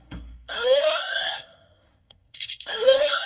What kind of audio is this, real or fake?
fake